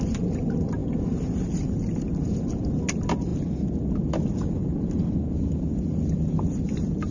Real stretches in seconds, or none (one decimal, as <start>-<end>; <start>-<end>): 0.0-7.1